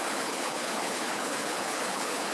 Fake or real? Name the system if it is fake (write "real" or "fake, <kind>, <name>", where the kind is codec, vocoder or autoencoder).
fake, codec, HILCodec